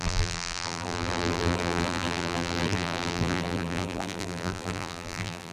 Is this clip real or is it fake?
fake